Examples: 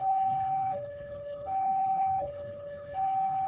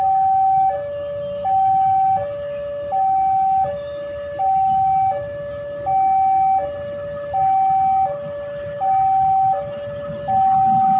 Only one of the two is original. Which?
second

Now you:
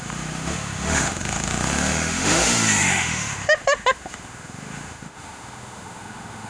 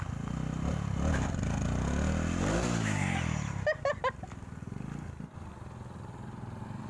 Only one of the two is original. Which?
second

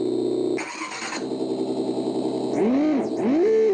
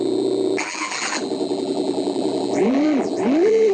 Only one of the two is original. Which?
first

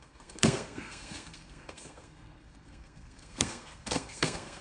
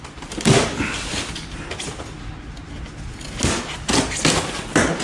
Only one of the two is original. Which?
second